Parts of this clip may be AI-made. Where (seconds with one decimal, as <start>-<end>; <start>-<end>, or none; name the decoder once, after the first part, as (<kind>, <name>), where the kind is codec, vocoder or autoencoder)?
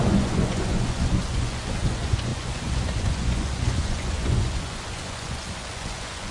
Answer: 0.0-6.3 (vocoder, Vocos)